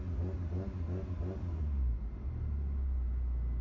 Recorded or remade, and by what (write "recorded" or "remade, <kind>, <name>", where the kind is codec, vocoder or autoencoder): recorded